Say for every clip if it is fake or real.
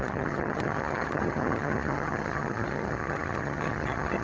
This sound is fake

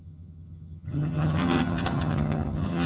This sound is fake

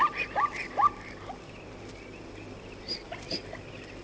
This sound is real